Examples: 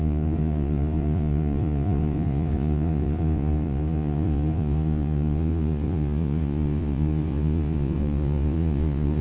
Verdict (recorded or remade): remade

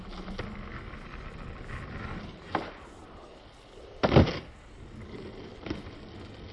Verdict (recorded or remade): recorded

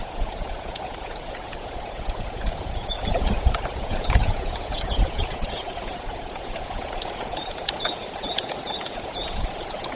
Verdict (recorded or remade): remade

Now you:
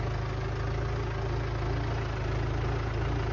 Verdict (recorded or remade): recorded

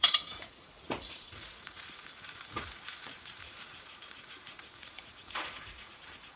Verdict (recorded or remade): remade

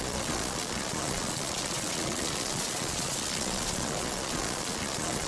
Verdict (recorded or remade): remade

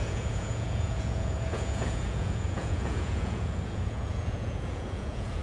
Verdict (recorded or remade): remade